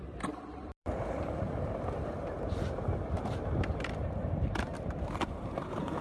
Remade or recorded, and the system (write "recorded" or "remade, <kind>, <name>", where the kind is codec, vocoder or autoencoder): remade, vocoder, BigVGAN v2